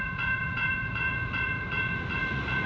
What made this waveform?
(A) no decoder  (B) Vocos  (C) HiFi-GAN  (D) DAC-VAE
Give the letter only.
B